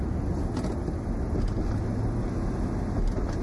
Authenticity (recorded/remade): recorded